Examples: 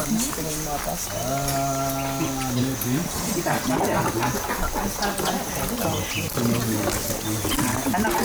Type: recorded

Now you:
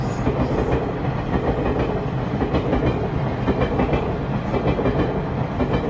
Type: recorded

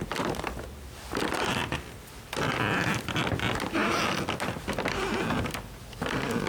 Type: recorded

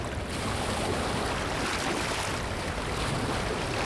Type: recorded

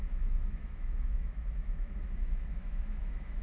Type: remade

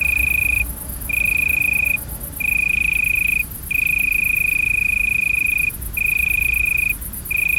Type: recorded